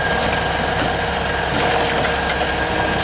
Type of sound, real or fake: real